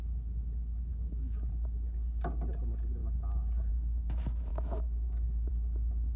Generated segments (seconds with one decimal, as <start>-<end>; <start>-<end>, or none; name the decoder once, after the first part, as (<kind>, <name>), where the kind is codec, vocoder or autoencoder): 0.9-1.5 (autoencoder, DAC-VAE); 4.5-5.5